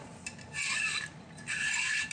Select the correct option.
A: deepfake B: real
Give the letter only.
A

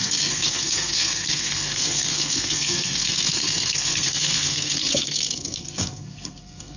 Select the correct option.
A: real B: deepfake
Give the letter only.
B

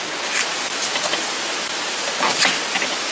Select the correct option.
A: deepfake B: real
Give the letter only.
A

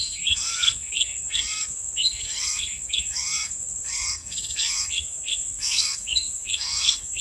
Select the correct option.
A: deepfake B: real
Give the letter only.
A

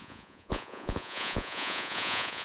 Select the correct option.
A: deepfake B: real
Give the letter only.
A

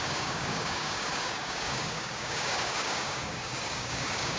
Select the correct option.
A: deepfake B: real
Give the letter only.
A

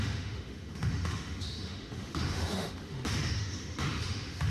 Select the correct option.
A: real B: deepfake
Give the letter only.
B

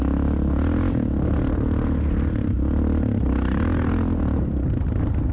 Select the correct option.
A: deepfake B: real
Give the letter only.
B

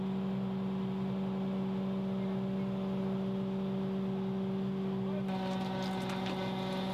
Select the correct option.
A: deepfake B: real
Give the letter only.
B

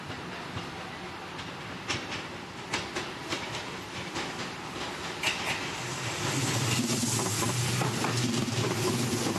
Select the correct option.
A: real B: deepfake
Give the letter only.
A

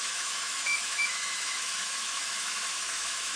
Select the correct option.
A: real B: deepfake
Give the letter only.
B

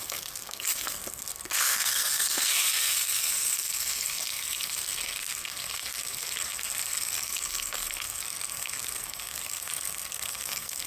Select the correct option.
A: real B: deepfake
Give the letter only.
B